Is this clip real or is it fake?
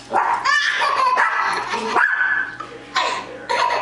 fake